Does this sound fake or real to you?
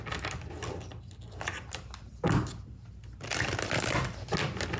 real